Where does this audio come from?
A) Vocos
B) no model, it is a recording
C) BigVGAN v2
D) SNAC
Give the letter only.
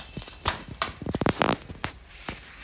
C